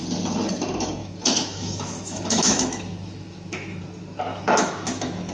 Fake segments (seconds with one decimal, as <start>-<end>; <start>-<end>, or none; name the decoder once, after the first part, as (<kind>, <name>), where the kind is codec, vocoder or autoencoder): 1.0-3.8 (autoencoder, DAC-VAE); 4.3-5.3